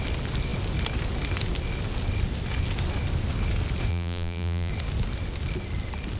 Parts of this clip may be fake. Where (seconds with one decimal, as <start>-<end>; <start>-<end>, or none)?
3.9-4.7